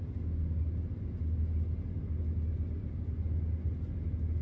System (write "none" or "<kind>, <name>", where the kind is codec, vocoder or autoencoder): none